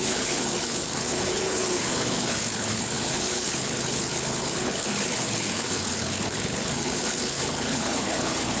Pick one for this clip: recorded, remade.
remade